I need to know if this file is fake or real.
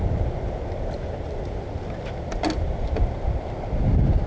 real